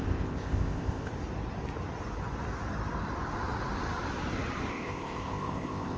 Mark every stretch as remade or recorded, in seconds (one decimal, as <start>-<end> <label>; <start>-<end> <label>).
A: 0.0-1.1 remade; 1.1-4.7 recorded; 4.7-6.0 remade